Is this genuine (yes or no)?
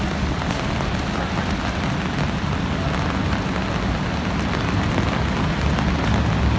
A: yes